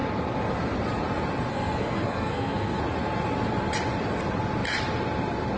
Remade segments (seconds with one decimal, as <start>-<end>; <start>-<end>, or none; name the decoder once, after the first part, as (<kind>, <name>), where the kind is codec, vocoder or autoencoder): 1.5-2.8 (codec, SNAC)